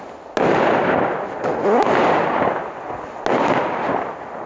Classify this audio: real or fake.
real